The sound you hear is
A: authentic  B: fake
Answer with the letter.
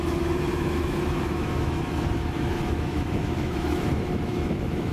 B